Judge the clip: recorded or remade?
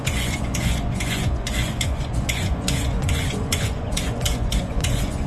remade